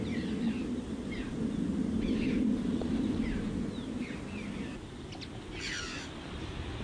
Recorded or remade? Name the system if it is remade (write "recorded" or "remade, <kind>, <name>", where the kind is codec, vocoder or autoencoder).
recorded